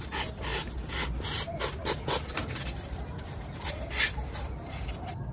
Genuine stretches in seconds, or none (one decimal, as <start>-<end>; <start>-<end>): 0.0-5.3